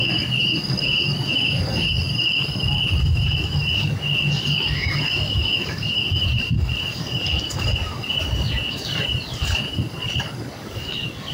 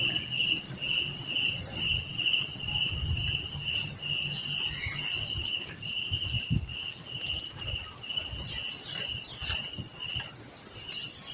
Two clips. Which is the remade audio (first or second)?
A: first